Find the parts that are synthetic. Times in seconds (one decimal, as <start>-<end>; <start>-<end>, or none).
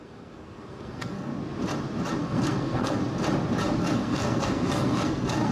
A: 0.0-1.3; 2.2-3.0; 3.8-5.5